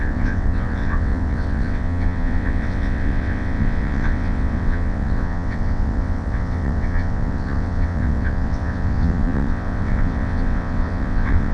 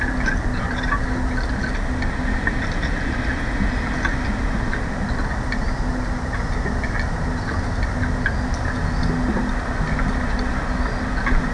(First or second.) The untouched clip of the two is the second